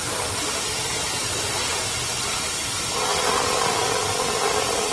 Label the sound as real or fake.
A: real